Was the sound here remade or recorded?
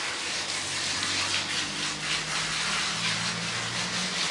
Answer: recorded